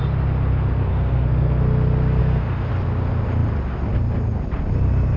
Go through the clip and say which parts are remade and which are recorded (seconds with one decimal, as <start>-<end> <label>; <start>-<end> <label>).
0.0-0.9 recorded; 0.9-1.6 remade; 1.6-2.2 recorded; 2.2-2.7 remade; 2.7-5.2 recorded